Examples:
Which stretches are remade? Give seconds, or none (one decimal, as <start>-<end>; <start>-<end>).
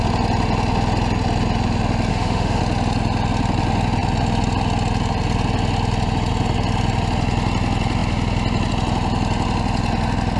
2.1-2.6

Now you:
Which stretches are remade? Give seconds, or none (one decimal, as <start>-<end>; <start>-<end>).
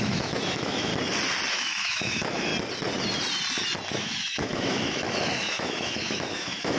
0.0-0.9; 1.5-2.5; 3.9-6.8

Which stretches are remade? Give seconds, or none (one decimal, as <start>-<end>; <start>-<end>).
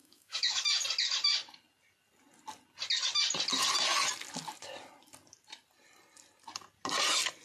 0.0-0.6